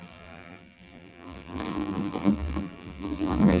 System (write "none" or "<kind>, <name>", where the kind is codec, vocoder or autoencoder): vocoder, BigVGAN v2